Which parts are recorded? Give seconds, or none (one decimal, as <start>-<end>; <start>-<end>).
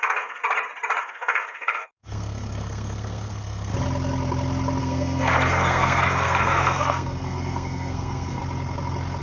0.4-1.0; 3.7-4.8; 8.4-9.2